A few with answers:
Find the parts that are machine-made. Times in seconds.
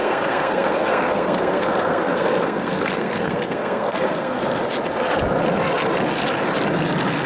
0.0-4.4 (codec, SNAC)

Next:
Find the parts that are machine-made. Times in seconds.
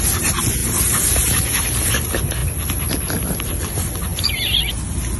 0.6-1.9 (vocoder, BigVGAN v2)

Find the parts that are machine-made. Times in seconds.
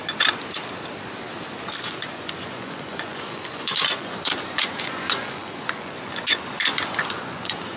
1.8-7.8 (vocoder, Vocos)